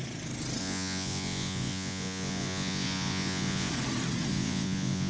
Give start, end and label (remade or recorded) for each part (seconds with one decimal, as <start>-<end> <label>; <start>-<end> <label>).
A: 0.0-0.6 recorded; 0.6-3.7 remade; 3.7-4.3 recorded; 4.3-5.1 remade